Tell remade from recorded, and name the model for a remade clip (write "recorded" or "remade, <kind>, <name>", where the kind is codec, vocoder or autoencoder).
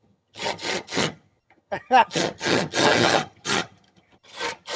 remade, vocoder, HiFi-GAN